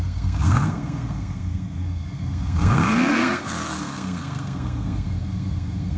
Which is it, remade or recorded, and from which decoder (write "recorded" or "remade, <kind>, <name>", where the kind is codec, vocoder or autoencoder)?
remade, codec, SNAC